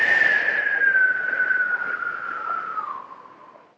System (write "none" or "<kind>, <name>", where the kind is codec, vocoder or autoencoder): none